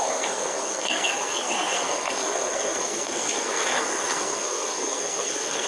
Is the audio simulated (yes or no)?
yes